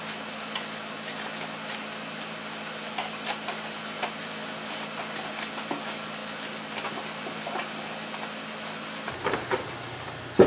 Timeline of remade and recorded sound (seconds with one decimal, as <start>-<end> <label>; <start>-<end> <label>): 0.0-10.5 recorded